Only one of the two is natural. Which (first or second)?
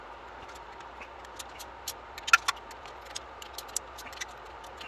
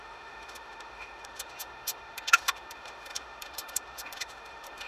first